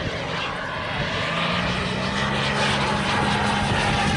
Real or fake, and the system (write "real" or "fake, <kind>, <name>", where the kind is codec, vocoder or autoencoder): real